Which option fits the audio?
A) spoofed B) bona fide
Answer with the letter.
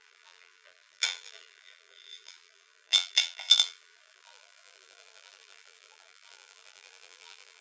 A